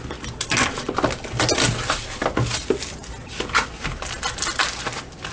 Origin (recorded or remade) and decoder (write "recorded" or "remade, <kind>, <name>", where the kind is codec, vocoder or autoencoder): recorded